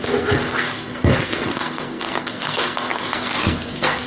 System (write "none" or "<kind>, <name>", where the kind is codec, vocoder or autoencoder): codec, SNAC